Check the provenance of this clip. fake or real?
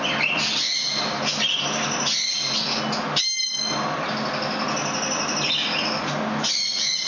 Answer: real